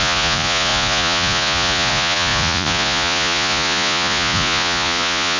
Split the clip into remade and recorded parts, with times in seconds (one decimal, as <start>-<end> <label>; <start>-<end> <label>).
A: 0.0-5.4 remade